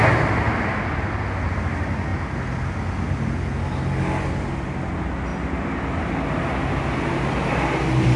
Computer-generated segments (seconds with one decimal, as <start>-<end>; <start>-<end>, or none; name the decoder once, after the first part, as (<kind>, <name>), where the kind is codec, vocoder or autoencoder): none